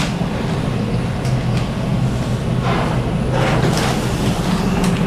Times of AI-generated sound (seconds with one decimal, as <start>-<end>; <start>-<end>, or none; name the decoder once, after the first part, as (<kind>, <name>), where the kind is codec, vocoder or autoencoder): none

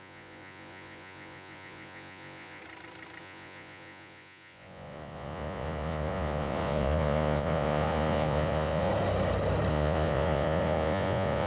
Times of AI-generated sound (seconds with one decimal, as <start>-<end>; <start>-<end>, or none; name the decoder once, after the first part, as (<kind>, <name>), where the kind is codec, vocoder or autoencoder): 0.0-2.6 (vocoder, Vocos); 3.2-8.9; 9.7-11.5

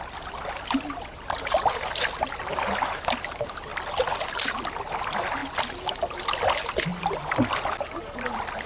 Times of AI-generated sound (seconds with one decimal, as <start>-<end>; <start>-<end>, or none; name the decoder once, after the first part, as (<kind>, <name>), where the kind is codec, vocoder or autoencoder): none

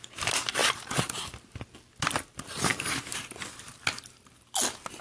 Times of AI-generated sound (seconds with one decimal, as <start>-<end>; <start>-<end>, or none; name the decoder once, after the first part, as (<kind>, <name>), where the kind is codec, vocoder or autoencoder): 0.6-1.2 (vocoder, BigVGAN v2); 2.7-3.4

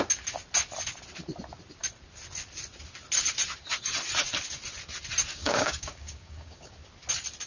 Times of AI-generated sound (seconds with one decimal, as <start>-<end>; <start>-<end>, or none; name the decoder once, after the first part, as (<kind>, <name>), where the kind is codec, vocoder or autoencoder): 5.3-6.7 (codec, DAC)

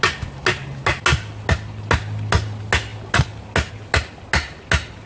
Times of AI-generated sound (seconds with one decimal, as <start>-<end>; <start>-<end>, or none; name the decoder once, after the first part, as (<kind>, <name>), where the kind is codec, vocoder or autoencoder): none